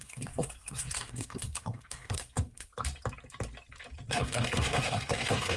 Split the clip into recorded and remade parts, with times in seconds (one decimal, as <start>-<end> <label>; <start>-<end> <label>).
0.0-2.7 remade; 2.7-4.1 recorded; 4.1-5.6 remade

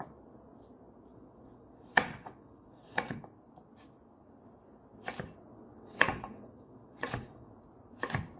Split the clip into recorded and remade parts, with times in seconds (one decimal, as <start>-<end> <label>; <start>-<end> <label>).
0.0-1.1 recorded; 1.1-3.2 remade; 3.2-5.7 recorded; 5.7-7.5 remade; 7.5-8.4 recorded

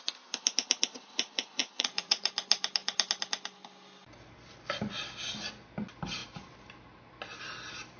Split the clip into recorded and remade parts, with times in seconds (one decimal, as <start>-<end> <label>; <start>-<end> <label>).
0.0-1.6 recorded; 1.6-2.3 remade; 2.3-8.0 recorded

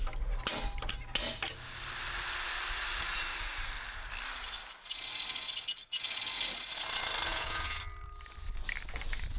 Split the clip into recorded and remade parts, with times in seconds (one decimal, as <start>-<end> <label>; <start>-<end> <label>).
0.0-7.3 recorded; 7.3-7.8 remade; 7.8-9.4 recorded